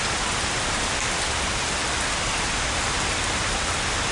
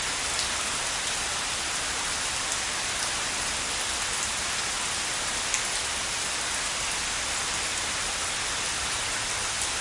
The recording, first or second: second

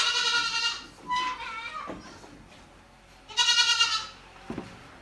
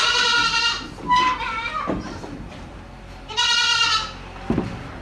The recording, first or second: first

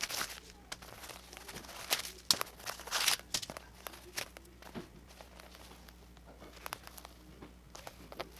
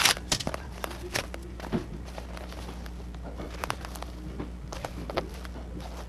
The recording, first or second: first